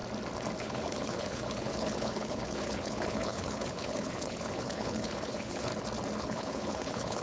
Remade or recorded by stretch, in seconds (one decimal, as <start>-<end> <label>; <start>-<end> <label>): 0.0-0.6 recorded; 0.6-5.7 remade; 5.7-6.2 recorded; 6.2-7.2 remade

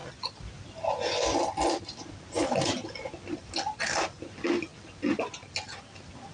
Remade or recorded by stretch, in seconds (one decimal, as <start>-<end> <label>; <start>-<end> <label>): 0.0-6.3 recorded